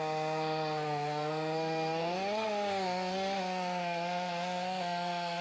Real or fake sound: fake